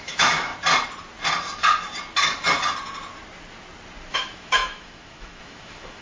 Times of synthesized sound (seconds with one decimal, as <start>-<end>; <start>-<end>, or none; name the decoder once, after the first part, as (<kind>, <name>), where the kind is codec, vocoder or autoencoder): 0.0-0.5 (autoencoder, DAC-VAE); 4.1-6.0